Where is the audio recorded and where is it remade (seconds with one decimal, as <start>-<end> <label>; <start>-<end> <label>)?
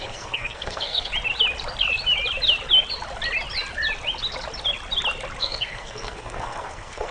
0.0-1.1 remade; 1.1-5.4 recorded; 5.4-7.1 remade